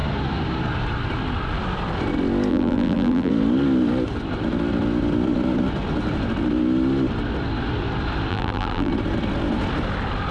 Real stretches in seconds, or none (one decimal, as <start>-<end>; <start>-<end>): 0.0-2.5; 3.3-8.3; 8.9-10.3